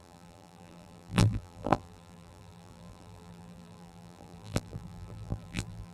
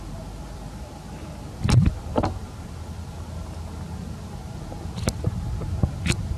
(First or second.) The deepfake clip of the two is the first